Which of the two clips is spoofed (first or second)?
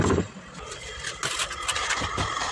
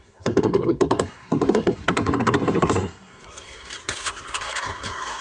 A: second